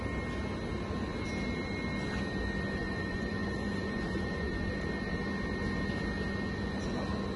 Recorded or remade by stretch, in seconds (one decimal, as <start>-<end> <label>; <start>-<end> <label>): 0.0-2.8 recorded; 2.8-4.7 remade; 4.7-7.4 recorded